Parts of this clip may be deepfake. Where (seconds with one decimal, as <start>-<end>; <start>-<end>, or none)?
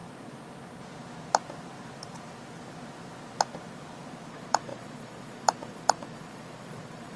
4.3-7.2